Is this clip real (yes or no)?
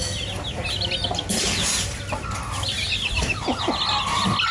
yes